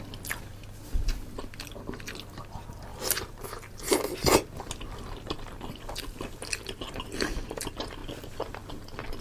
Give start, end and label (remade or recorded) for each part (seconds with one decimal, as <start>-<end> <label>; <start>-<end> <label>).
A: 0.0-9.2 recorded